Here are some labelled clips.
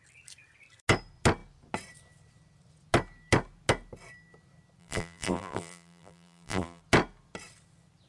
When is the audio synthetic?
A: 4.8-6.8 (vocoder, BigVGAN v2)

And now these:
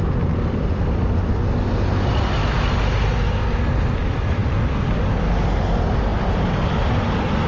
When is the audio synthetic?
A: none

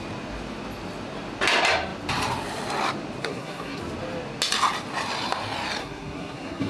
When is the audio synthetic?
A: 3.2-3.8 (codec, SNAC); 5.8-6.7

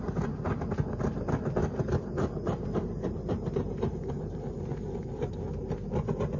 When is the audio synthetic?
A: 1.6-4.2 (vocoder, BigVGAN v2)

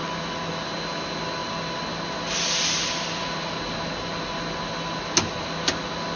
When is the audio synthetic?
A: none

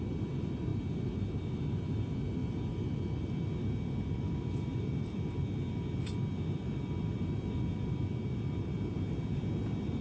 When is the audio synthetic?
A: none

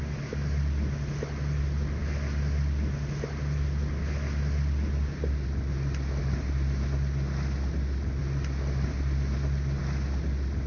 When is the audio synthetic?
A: none

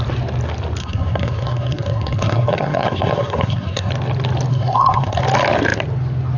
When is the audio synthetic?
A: 0.8-3.9 (codec, SNAC); 4.5-5.2